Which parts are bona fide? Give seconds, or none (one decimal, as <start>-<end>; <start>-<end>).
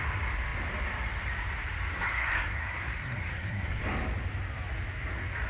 0.0-2.1; 3.8-5.5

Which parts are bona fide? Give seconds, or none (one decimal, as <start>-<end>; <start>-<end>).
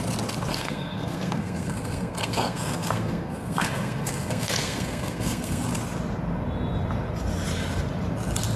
0.0-0.5; 5.6-8.6